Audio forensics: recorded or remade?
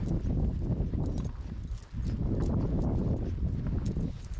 recorded